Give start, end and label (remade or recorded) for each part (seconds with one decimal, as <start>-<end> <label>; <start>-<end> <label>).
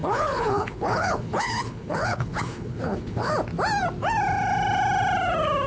0.0-3.3 remade; 3.3-5.7 recorded